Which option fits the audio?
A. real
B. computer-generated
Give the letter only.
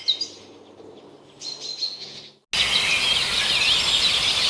A